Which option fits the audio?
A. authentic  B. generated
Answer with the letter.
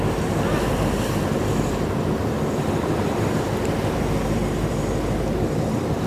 A